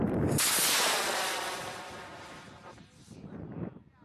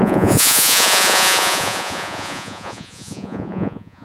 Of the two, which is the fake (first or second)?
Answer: second